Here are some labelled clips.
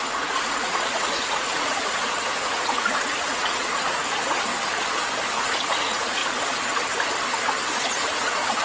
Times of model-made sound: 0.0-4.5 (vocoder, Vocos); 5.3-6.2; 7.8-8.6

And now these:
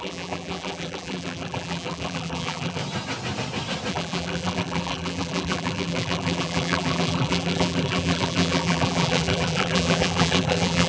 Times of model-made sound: 0.0-2.8 (vocoder, BigVGAN v2); 3.9-10.9

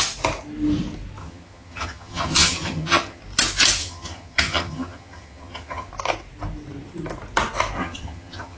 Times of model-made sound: 1.2-3.2 (vocoder, HiFi-GAN); 3.8-5.9; 7.8-8.6

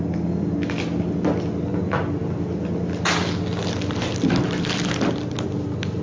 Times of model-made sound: none

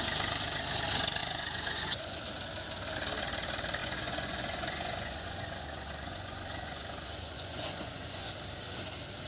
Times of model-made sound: 1.2-2.2 (vocoder, Vocos); 3.8-8.3

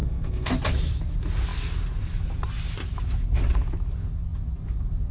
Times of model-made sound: 0.0-0.5 (codec, SNAC)

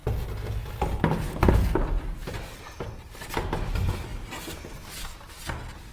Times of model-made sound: none